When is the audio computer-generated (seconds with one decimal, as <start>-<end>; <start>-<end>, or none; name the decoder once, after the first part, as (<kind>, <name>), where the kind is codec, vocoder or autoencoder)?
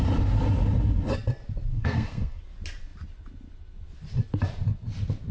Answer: 1.7-2.4 (codec, SNAC)